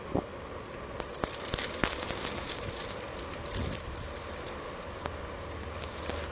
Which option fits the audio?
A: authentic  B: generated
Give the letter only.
A